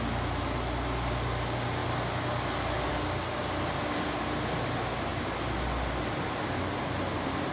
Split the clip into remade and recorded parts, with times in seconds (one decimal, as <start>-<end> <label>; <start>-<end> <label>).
0.0-7.5 recorded